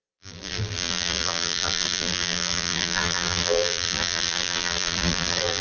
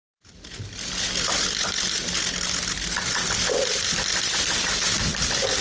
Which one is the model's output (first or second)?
first